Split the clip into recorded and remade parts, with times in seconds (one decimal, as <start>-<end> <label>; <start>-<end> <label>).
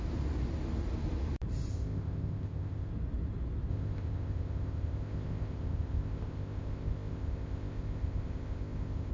0.0-1.7 recorded; 1.7-2.9 remade; 2.9-3.7 recorded; 3.7-9.1 remade